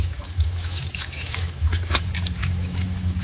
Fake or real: fake